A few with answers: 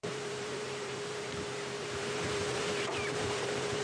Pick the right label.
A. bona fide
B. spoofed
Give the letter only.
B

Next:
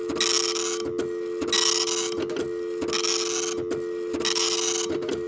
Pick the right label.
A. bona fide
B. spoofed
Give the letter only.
A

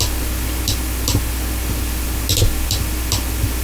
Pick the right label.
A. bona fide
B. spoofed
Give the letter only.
A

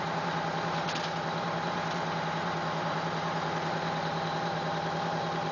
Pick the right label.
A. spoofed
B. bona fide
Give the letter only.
A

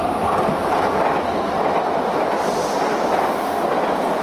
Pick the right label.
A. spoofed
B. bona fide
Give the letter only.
B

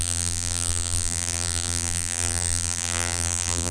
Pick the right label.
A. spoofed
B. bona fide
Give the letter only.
A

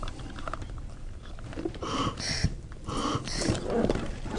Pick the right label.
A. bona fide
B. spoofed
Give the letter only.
B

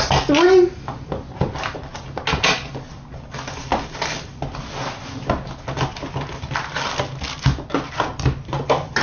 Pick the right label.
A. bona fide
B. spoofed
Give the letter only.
A